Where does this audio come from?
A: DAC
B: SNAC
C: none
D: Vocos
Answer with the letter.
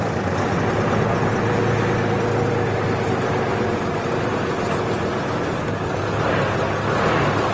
C